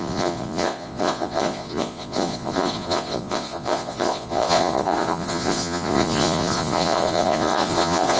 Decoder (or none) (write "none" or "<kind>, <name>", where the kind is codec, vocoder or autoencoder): vocoder, Vocos